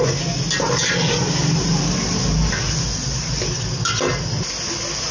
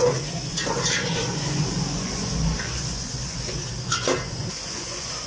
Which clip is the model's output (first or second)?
second